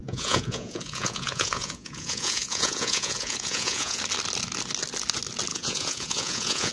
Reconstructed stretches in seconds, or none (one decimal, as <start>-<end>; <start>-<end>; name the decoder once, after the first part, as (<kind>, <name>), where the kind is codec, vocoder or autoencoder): 0.0-4.0 (vocoder, Vocos); 5.5-6.7